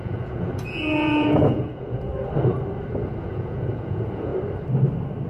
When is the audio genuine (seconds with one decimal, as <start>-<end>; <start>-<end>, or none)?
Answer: 2.1-3.2; 4.3-5.3